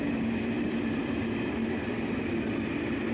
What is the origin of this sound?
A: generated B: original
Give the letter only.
B